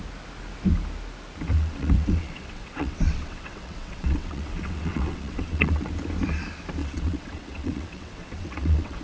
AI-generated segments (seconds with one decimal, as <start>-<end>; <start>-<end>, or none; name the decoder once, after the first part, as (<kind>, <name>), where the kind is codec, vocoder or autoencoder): 1.5-5.9 (vocoder, WaveNeXt); 6.8-9.0